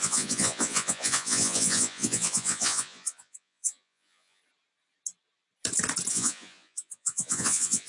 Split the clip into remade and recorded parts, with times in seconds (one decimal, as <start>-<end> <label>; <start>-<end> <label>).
0.0-4.4 remade; 4.4-6.1 recorded; 6.1-7.9 remade